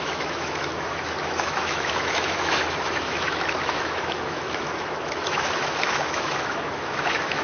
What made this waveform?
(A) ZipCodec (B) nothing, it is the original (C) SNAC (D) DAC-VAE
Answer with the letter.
D